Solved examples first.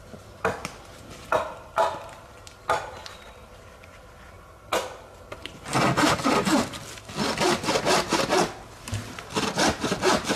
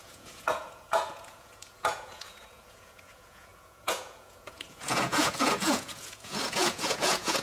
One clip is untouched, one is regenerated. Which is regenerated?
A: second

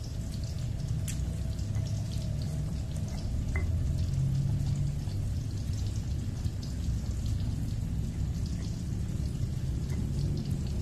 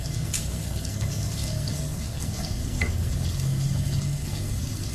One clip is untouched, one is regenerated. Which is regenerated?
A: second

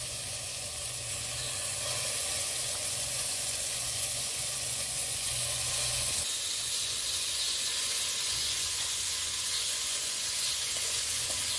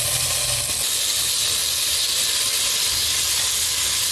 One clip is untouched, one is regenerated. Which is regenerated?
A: first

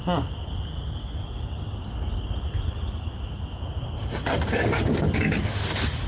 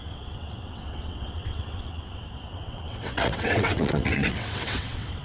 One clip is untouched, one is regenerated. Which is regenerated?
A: second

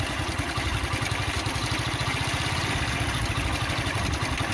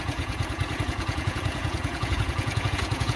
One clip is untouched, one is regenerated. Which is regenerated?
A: second